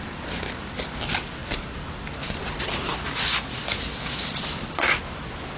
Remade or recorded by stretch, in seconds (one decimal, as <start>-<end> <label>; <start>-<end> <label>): 0.0-5.6 recorded